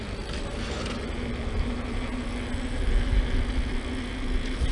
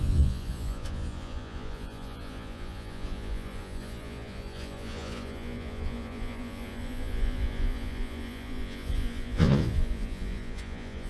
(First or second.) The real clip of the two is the first